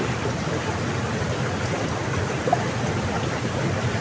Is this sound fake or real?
real